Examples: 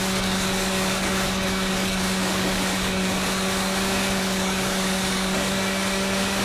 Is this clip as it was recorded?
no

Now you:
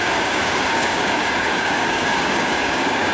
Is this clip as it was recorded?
no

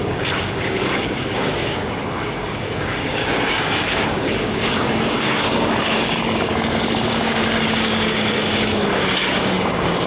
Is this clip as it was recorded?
no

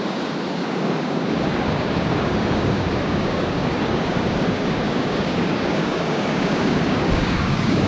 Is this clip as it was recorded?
no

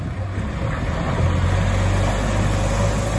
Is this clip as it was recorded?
yes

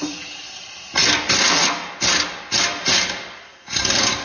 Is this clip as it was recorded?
yes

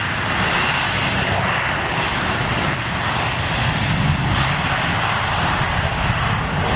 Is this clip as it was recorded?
yes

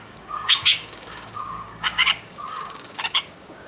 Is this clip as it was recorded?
no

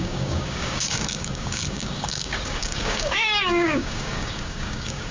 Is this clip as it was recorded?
no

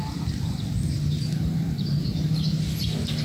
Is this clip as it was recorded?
yes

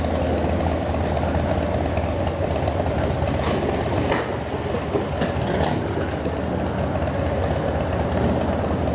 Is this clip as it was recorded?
yes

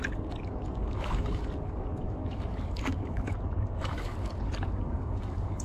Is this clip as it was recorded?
no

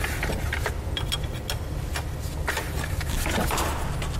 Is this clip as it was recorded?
yes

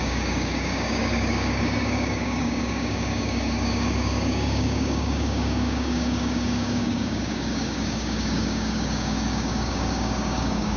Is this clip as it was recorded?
no